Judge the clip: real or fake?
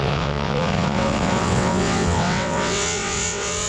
fake